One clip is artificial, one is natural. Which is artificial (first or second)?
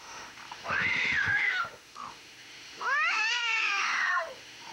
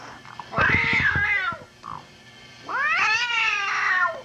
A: first